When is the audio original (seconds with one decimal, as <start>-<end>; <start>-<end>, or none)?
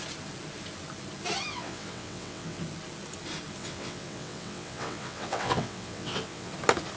0.0-1.5; 2.6-3.6; 6.5-7.0